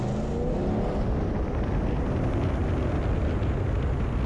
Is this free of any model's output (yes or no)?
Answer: yes